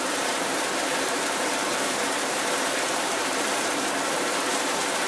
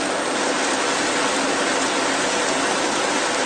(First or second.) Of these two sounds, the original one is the second